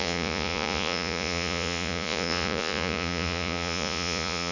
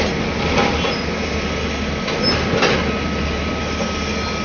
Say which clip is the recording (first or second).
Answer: second